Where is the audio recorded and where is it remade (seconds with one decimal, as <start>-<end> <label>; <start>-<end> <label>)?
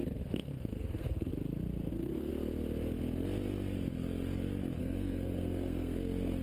0.0-1.3 remade; 1.3-1.9 recorded; 1.9-2.3 remade; 2.3-4.8 recorded; 4.8-6.4 remade